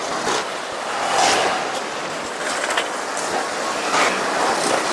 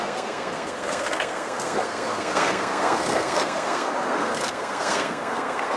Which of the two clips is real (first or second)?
first